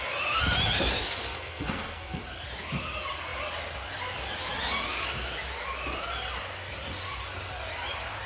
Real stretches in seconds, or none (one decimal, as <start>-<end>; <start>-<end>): 0.0-1.0; 2.2-8.3